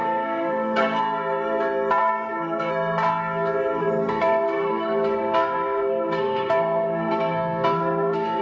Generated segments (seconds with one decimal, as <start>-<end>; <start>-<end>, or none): 0.0-1.0; 2.0-2.7; 3.8-8.4